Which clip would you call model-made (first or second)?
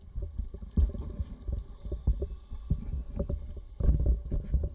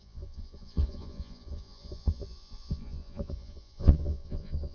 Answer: second